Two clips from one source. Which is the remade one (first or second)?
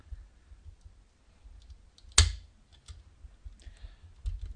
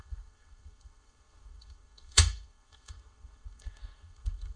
second